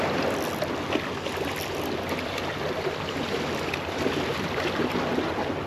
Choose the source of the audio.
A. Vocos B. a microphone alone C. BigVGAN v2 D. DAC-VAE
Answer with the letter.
B